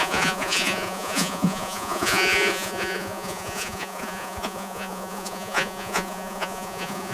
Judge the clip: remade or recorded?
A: remade